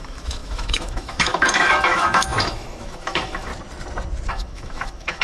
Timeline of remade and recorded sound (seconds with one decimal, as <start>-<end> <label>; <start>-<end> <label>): 0.0-3.5 remade; 3.5-4.3 recorded; 4.3-5.2 remade